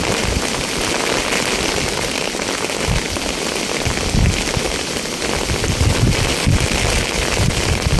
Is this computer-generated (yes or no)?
no